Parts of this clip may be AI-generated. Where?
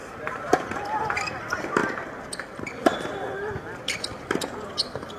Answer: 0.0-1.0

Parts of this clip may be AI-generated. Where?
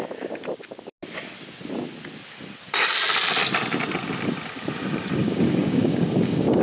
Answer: 5.2-6.6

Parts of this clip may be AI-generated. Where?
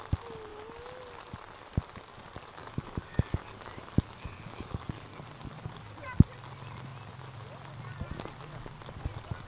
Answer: 2.6-5.1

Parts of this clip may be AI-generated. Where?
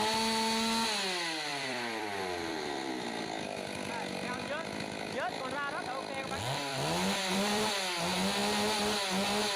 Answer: 1.5-3.9; 6.7-7.7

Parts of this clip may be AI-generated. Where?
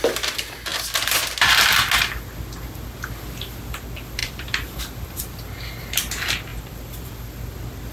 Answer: 4.2-4.8; 6.5-7.1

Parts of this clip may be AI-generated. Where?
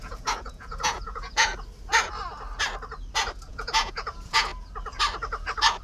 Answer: 0.0-1.5; 3.5-4.5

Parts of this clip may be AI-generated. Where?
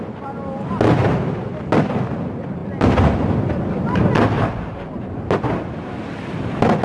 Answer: 2.6-3.6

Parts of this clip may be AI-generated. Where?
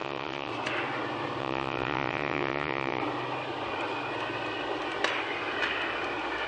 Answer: 0.0-0.5; 1.4-3.0